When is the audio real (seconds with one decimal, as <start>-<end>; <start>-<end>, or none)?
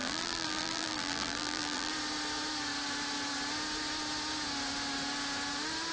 1.9-5.9